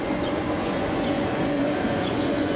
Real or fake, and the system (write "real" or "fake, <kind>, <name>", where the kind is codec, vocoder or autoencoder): fake, vocoder, Vocos